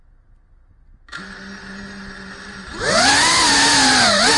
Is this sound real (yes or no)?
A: yes